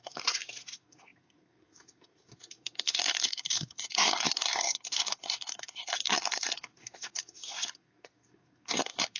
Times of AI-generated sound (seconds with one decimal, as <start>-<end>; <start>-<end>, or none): 0.0-9.2